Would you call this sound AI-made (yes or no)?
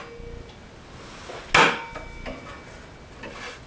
no